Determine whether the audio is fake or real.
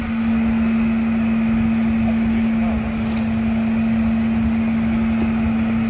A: real